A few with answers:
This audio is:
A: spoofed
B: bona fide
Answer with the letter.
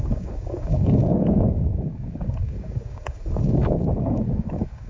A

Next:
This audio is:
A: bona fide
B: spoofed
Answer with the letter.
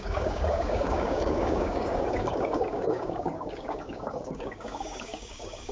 B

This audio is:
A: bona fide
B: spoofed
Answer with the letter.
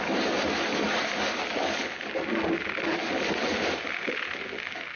A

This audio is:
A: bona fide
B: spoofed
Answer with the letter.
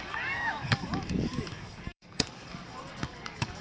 B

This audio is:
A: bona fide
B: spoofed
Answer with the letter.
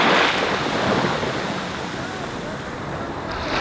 A